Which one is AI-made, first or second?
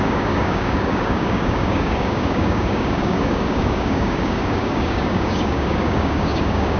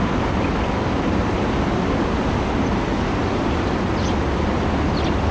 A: first